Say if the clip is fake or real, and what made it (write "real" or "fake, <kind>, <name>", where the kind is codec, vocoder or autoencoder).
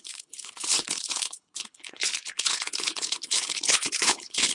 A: fake, codec, HILCodec